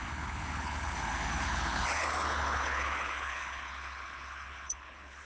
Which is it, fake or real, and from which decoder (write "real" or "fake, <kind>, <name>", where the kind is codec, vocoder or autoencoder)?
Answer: fake, codec, HILCodec